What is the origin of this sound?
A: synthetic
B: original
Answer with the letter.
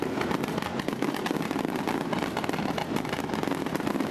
B